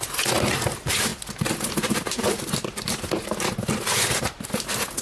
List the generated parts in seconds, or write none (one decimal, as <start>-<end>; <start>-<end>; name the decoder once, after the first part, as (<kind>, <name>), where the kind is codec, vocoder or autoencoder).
none